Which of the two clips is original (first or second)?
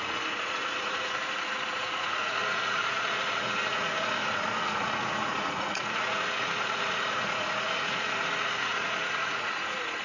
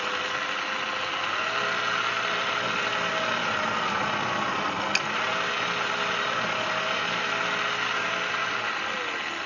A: second